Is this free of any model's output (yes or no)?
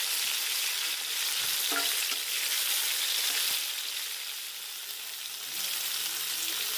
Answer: yes